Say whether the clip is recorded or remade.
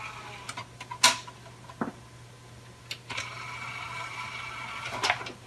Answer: recorded